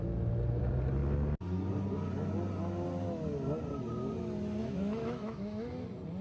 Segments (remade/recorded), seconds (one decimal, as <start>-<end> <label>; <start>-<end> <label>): 0.0-4.6 recorded; 4.6-5.7 remade; 5.7-6.2 recorded